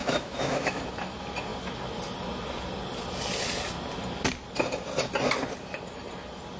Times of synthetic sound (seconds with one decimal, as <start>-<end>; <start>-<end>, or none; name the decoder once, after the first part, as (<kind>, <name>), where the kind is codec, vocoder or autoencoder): 0.0-0.8 (autoencoder, DAC-VAE)